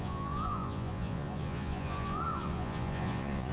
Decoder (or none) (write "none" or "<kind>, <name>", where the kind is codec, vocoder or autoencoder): vocoder, Vocos